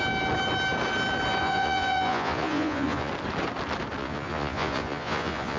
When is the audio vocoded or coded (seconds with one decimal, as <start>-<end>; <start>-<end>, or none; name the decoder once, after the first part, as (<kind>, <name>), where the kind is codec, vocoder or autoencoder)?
1.4-3.1 (vocoder, Vocos); 4.0-5.6